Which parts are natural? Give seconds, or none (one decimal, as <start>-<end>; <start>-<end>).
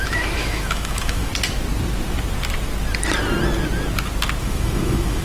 1.3-4.4